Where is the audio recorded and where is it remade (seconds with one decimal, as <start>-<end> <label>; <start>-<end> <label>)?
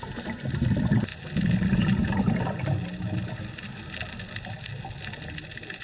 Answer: 0.0-5.8 recorded